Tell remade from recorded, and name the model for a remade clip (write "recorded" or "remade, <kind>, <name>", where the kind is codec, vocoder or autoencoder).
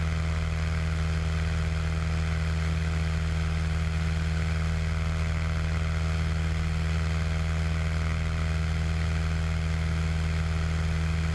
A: recorded